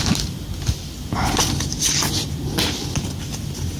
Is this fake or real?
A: real